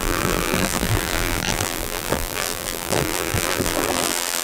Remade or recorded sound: remade